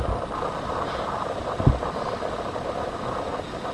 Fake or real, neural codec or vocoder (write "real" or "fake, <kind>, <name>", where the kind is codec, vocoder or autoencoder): real